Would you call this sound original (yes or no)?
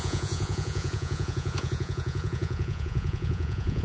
no